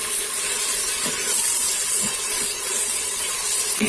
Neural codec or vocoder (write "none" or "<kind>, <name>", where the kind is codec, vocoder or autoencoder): vocoder, Vocos